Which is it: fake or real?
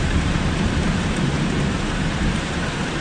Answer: fake